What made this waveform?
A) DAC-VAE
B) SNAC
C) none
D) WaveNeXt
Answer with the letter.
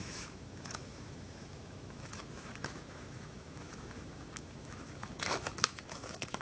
A